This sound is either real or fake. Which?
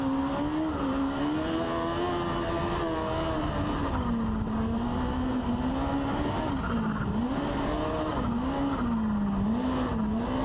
real